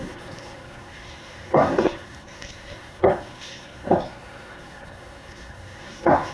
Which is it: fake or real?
fake